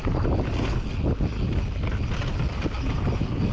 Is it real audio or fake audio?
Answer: real